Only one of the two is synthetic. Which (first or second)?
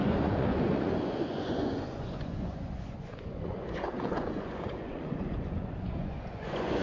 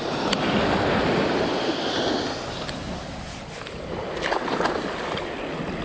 first